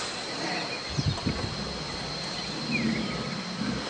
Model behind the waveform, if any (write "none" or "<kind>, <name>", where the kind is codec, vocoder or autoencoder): none